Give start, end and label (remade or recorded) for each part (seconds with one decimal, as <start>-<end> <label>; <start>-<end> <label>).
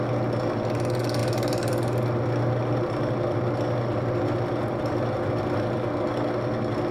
0.0-6.9 recorded